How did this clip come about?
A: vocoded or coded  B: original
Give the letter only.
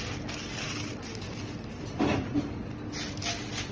B